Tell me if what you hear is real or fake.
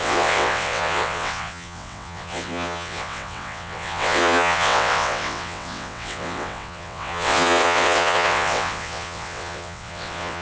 fake